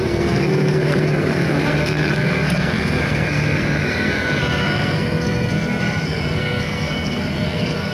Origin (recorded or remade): remade